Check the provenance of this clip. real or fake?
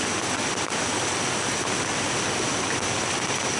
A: real